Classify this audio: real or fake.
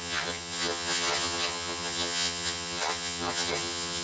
fake